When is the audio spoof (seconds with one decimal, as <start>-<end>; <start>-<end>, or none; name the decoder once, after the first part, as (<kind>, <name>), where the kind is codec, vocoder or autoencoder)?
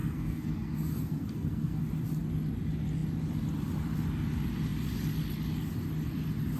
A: 0.0-1.8 (codec, SNAC)